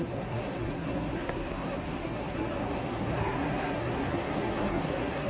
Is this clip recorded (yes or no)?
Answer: no